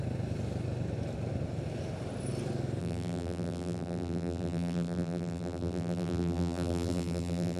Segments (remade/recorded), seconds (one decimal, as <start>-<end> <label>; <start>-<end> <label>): 0.0-2.8 recorded; 2.8-7.6 remade